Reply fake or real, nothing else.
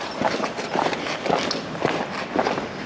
real